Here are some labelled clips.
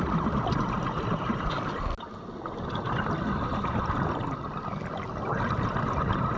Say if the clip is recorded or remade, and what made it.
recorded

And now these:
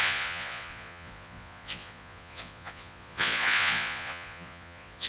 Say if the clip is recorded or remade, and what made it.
remade, vocoder, Vocos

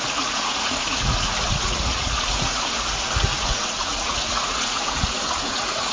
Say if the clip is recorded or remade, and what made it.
remade, vocoder, Vocos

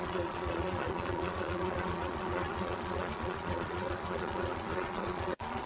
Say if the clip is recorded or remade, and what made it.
remade, vocoder, Vocos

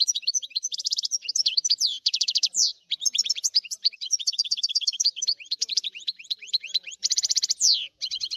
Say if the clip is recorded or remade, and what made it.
remade, vocoder, Vocos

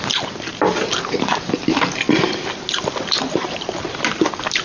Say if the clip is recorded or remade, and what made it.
recorded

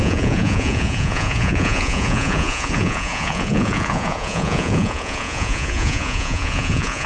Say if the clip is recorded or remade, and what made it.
remade, vocoder, Vocos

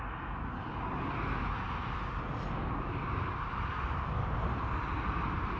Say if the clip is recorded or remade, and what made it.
recorded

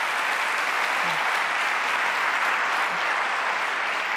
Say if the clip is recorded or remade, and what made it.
recorded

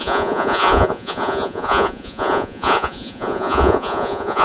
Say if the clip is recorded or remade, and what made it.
remade, vocoder, Vocos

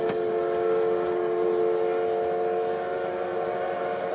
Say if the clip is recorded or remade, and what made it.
recorded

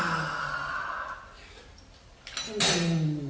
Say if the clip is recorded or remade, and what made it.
recorded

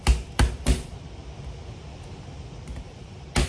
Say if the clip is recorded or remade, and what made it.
recorded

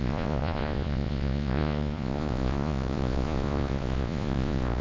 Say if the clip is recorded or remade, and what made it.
remade, vocoder, Vocos